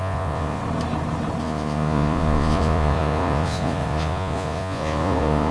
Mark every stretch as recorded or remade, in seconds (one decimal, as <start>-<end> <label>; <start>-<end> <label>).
0.0-0.6 remade; 0.6-1.4 recorded; 1.4-5.5 remade